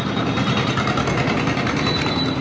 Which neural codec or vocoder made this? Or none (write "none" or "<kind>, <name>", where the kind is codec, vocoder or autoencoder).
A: none